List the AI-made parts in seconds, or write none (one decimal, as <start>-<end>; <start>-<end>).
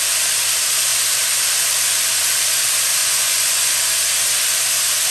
3.0-3.7